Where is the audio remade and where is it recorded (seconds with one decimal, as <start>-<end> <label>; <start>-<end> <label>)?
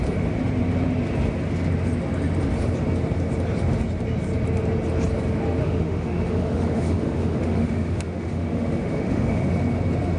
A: 0.0-5.6 recorded; 5.6-9.5 remade; 9.5-10.2 recorded